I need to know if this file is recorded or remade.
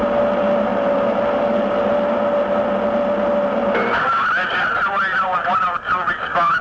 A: recorded